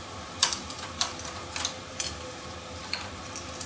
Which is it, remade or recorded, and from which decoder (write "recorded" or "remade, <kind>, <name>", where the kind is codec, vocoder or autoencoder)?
remade, vocoder, BigVGAN v2